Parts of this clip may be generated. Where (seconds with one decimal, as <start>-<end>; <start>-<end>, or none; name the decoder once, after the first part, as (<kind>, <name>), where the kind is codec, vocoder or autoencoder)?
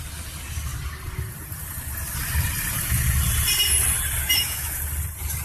4.2-4.8 (autoencoder, DAC-VAE)